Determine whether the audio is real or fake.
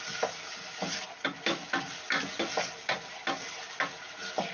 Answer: real